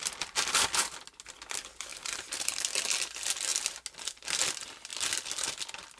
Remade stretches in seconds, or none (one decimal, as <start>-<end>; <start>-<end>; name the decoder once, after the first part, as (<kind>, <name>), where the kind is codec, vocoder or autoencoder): 1.9-2.6 (vocoder, BigVGAN v2)